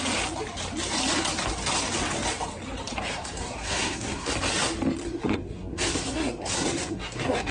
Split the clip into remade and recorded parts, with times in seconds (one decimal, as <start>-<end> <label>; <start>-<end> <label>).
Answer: 0.0-3.1 recorded; 3.1-4.3 remade; 4.3-5.0 recorded; 5.0-7.5 remade